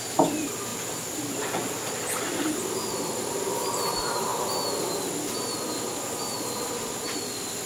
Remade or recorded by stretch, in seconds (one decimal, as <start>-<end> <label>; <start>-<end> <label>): 0.0-7.7 recorded